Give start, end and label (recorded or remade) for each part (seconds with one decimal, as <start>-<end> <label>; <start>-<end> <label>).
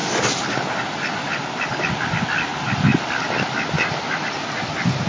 0.0-5.1 recorded